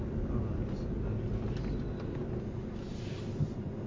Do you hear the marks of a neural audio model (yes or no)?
no